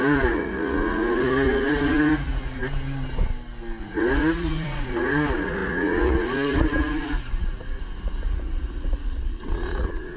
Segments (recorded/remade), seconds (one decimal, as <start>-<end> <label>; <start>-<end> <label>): 0.0-2.6 remade; 2.6-3.8 recorded; 3.8-10.2 remade

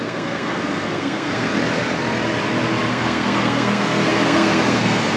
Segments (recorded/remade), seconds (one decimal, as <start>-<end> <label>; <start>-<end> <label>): 0.0-1.5 remade; 1.5-2.9 recorded; 2.9-5.2 remade